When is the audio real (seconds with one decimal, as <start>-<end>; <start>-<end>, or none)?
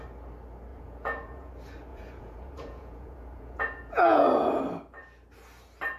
0.0-0.7; 1.5-1.9; 4.6-6.0